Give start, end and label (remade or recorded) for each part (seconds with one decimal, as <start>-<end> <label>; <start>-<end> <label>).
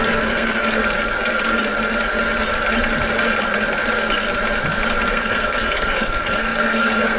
0.0-0.8 remade; 0.8-5.1 recorded; 5.1-7.2 remade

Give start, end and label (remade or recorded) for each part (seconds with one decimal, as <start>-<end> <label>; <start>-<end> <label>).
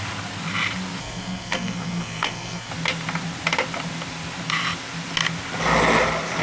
0.0-1.0 recorded; 1.0-2.7 remade; 2.7-6.4 recorded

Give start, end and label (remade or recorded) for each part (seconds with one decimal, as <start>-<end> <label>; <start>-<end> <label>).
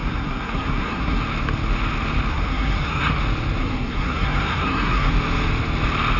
0.0-1.2 remade; 1.2-2.3 recorded; 2.3-3.2 remade; 3.2-3.6 recorded; 3.6-5.1 remade; 5.1-6.2 recorded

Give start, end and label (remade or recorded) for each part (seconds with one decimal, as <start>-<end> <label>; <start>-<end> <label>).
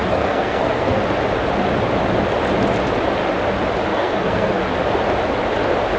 0.0-1.0 remade; 1.0-3.9 recorded; 3.9-4.6 remade; 4.6-6.0 recorded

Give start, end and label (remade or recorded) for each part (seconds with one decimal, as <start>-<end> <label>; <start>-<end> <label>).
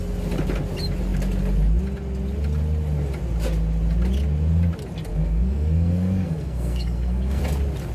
0.0-5.1 recorded; 5.1-7.4 remade; 7.4-7.9 recorded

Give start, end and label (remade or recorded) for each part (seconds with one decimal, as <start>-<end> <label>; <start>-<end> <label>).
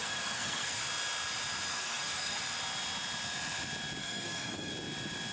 0.0-0.8 remade; 0.8-1.7 recorded; 1.7-2.4 remade; 2.4-4.0 recorded; 4.0-4.7 remade; 4.7-5.3 recorded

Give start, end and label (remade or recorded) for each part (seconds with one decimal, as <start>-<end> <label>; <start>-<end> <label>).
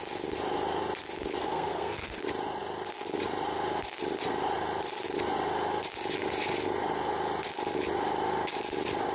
0.0-1.4 recorded; 1.4-2.2 remade; 2.2-9.1 recorded